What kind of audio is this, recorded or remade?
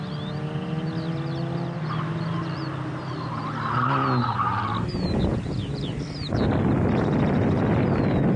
recorded